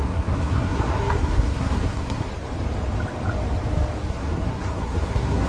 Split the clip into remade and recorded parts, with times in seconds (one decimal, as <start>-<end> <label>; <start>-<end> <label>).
0.0-2.3 remade; 2.3-4.1 recorded; 4.1-5.5 remade